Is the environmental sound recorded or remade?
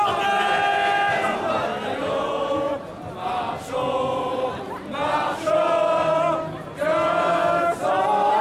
recorded